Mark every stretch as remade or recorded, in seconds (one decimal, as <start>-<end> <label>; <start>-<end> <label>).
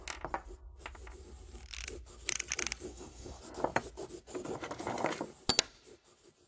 0.0-2.9 recorded; 2.9-3.4 remade; 3.4-6.5 recorded